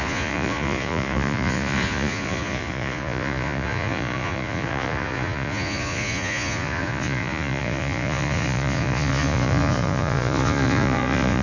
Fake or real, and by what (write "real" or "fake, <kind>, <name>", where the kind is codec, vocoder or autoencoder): fake, vocoder, Vocos